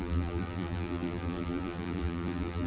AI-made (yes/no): yes